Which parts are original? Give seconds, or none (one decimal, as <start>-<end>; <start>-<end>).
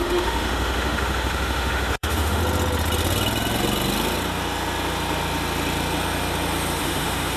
2.4-6.8